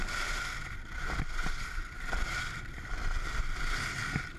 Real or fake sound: real